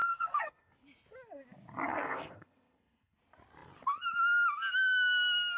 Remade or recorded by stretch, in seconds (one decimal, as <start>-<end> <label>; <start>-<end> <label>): 0.0-0.7 remade; 0.7-1.9 recorded; 1.9-3.2 remade; 3.2-5.6 recorded